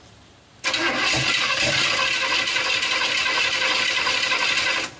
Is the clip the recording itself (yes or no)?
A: yes